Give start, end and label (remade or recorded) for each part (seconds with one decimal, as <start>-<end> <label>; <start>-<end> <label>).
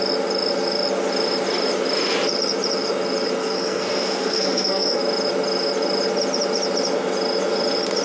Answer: 0.0-3.4 recorded; 3.4-5.0 remade; 5.0-8.0 recorded